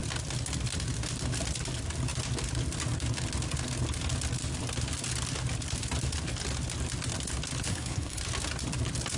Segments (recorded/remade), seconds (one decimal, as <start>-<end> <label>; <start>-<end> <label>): 0.0-7.7 recorded; 7.7-8.2 remade; 8.2-9.2 recorded